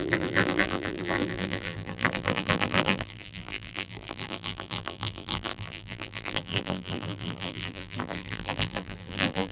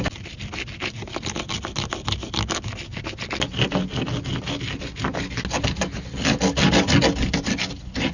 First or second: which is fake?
first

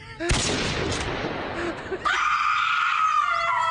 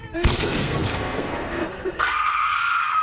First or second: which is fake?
second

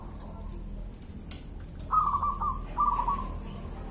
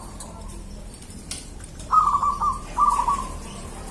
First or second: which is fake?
second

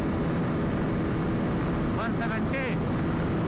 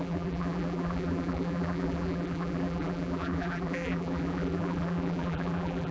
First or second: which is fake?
second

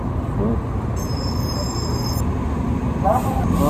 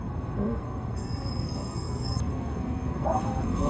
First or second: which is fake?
second